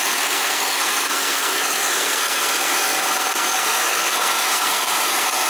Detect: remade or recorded remade